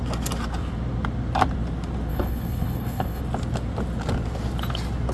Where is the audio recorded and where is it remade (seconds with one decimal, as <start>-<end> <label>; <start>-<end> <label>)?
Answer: 0.0-2.1 recorded; 2.1-3.2 remade; 3.2-5.1 recorded